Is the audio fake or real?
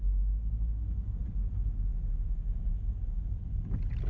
real